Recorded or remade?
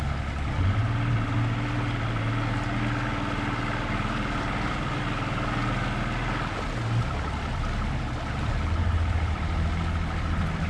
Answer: recorded